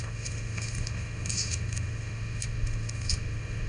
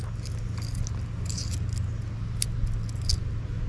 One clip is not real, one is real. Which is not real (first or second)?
first